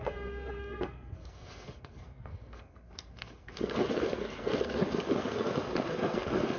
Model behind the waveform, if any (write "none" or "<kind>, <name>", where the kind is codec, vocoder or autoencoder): codec, SNAC